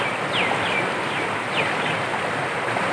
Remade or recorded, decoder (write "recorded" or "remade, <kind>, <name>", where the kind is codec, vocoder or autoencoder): recorded